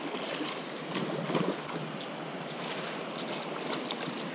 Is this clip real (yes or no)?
yes